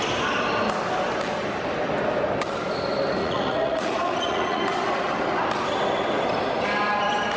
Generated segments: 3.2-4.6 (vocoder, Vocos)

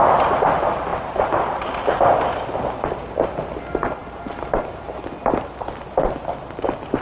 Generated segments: none

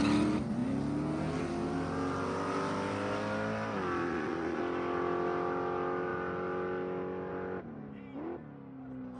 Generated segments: 4.0-4.6 (vocoder, Vocos)

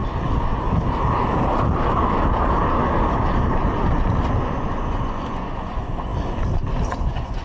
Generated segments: 4.4-6.1 (vocoder, Vocos); 6.9-7.4

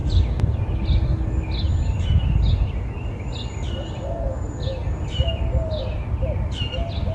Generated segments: none

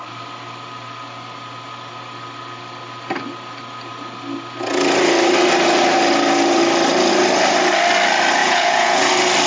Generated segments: 8.4-9.1 (vocoder, Vocos)

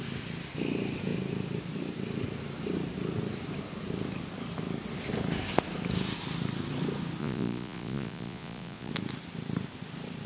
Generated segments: 7.2-8.9 (vocoder, Vocos)

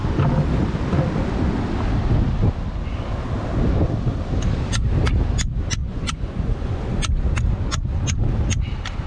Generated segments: 5.8-6.8 (vocoder, Vocos)